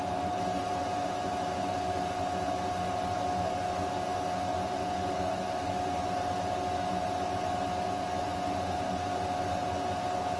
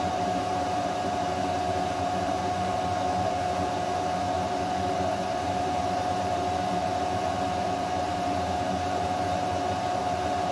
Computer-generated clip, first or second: second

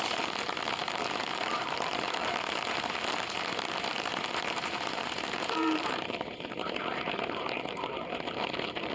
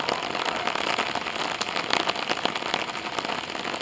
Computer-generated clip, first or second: first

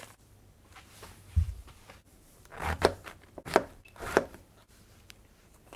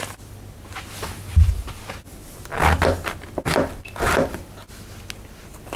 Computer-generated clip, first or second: first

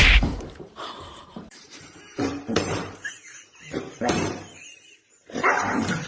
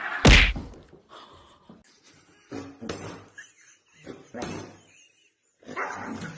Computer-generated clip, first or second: first